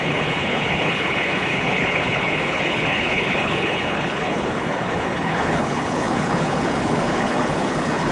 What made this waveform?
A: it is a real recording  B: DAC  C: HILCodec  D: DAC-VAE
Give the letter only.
C